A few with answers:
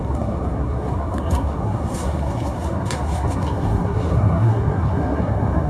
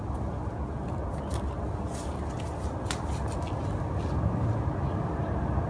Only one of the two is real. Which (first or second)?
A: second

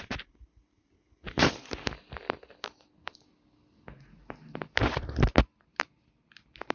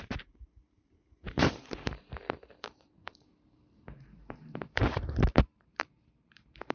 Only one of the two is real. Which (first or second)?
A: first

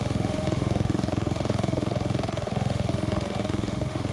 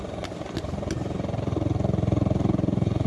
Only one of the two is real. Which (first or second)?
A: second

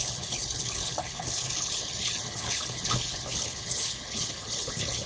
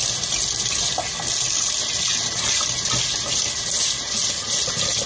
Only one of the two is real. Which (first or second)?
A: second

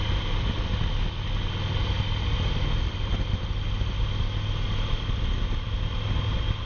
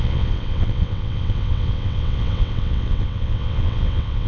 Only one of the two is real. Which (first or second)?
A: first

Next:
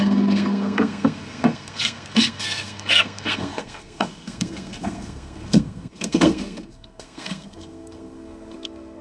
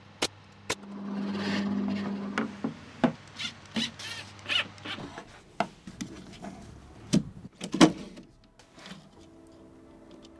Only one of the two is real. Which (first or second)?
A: second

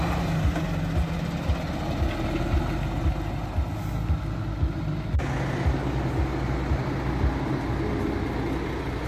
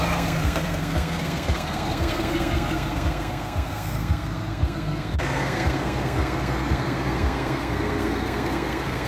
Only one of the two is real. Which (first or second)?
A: first